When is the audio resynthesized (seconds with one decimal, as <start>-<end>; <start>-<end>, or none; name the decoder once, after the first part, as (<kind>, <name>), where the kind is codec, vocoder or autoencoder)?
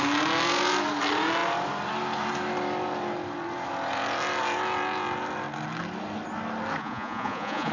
6.8-7.7 (vocoder, Vocos)